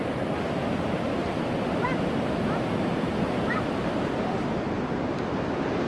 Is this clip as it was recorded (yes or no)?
yes